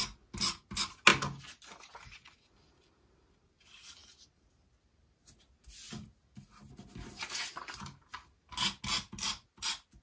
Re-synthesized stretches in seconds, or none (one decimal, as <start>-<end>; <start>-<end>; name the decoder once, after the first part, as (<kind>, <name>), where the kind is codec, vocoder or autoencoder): none